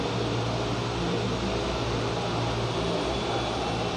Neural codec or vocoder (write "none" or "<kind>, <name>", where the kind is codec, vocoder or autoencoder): none